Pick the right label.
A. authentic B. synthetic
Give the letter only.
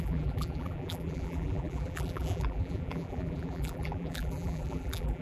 B